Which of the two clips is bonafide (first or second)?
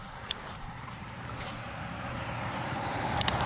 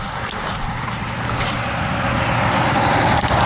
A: second